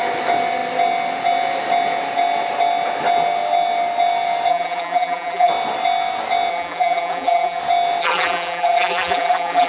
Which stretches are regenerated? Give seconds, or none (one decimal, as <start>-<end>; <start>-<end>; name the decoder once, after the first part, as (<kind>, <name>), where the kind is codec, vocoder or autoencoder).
4.5-5.5 (vocoder, BigVGAN v2); 6.5-7.6; 8.0-9.7